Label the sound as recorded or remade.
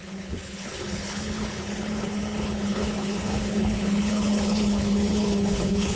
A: remade